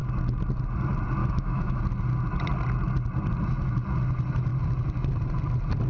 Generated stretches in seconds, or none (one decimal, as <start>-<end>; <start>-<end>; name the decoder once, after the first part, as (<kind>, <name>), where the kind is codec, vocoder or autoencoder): 1.2-1.8 (autoencoder, DAC-VAE)